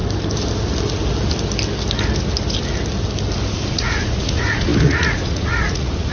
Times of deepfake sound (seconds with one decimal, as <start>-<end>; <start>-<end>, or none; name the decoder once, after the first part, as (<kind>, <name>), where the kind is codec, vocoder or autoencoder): 3.7-6.1 (vocoder, Vocos)